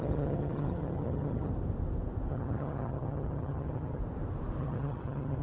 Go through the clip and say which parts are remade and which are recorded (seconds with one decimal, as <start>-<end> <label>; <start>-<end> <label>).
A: 0.0-1.5 remade; 1.5-2.3 recorded; 2.3-4.0 remade; 4.0-4.6 recorded; 4.6-5.4 remade